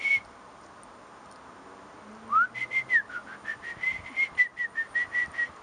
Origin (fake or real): real